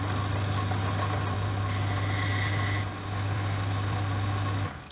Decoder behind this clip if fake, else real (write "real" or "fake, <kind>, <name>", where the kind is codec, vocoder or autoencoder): real